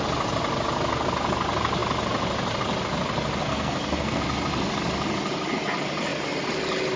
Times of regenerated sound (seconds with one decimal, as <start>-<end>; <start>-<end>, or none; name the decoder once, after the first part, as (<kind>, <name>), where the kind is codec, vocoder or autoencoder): 3.5-4.2 (codec, SNAC)